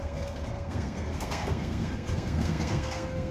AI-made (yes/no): yes